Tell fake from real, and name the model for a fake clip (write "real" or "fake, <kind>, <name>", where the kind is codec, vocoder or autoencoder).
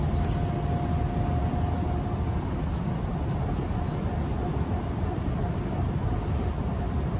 real